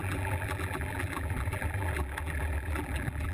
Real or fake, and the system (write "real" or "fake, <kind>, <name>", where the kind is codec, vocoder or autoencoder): fake, vocoder, BigVGAN v2